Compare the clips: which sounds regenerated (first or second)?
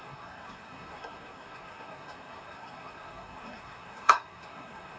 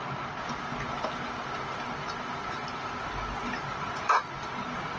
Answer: first